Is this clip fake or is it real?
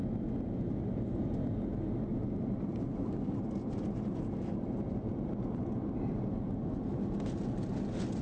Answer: real